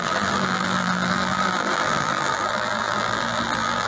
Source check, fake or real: fake